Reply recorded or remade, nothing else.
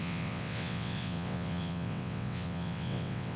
remade